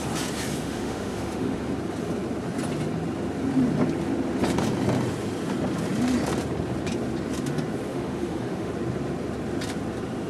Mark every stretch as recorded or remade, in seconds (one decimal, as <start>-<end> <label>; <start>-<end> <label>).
0.0-0.6 recorded; 0.6-1.6 remade; 1.6-7.9 recorded; 7.9-8.7 remade; 8.7-10.3 recorded